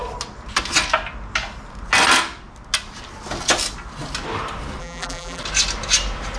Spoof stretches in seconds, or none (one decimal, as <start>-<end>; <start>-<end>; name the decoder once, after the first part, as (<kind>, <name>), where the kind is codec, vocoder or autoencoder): 4.8-5.4 (vocoder, BigVGAN v2)